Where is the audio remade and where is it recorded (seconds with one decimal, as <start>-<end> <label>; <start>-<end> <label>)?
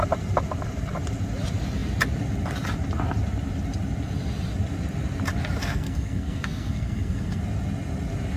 0.0-5.6 recorded; 5.6-7.4 remade; 7.4-8.4 recorded